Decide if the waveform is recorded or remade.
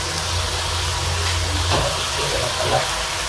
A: recorded